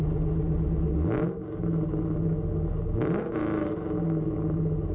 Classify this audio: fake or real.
real